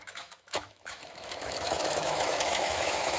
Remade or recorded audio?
remade